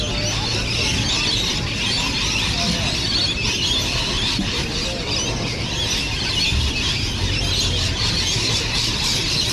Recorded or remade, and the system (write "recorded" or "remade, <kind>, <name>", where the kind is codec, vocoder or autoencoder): recorded